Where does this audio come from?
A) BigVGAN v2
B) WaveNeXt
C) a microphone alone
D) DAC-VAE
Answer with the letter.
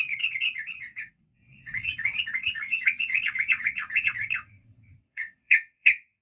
B